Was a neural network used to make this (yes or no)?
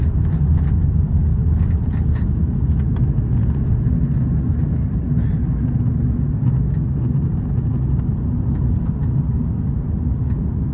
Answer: no